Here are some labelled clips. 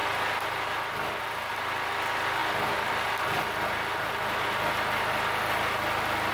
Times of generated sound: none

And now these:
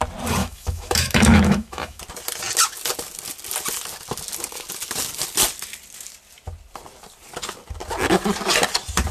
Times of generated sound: 0.4-2.0 (autoencoder, DAC-VAE)

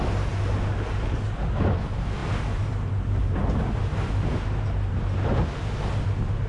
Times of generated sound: none

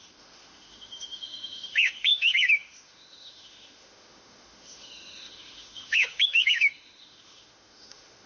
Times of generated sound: 0.0-8.3 (autoencoder, DAC-VAE)

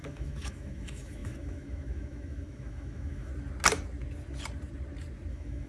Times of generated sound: 0.0-3.3 (autoencoder, DAC-VAE); 5.3-5.7

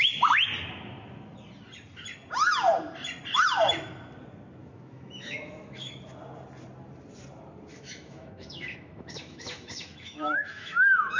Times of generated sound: 4.6-5.9 (autoencoder, DAC-VAE); 7.7-11.2

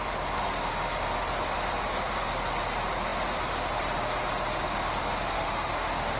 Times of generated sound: 5.3-6.2 (autoencoder, DAC-VAE)